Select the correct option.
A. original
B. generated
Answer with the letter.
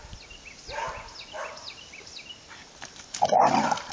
A